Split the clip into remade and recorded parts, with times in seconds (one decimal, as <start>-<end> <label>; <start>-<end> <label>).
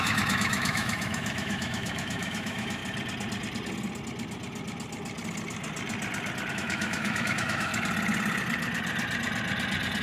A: 0.0-2.8 remade; 2.8-6.5 recorded; 6.5-7.7 remade; 7.7-10.0 recorded